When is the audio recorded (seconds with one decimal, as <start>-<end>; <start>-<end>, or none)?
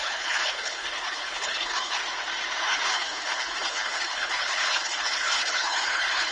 2.0-2.6